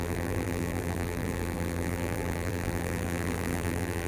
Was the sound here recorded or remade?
remade